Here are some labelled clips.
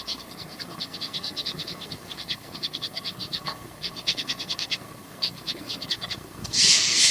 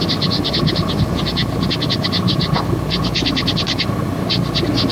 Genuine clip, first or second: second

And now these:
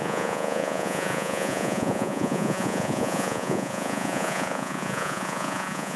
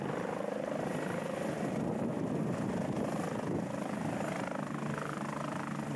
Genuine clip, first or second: second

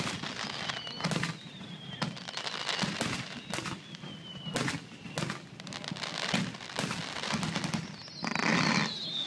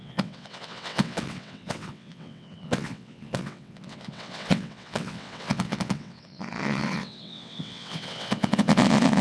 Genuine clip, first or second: first